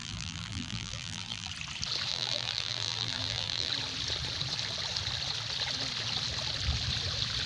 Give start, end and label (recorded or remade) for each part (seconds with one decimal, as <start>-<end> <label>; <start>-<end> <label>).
0.0-1.5 remade; 1.5-2.1 recorded; 2.1-3.7 remade; 3.7-7.5 recorded